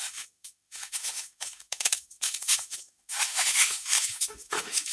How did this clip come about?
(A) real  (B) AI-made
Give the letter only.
B